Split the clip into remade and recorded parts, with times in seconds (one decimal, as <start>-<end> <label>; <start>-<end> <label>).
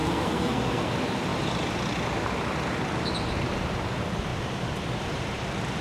0.0-0.9 remade; 0.9-5.8 recorded